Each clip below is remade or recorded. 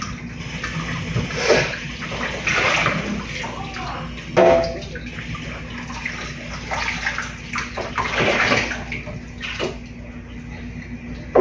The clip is recorded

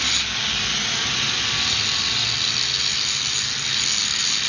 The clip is recorded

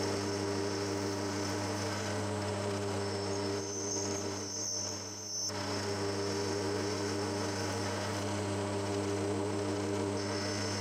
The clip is recorded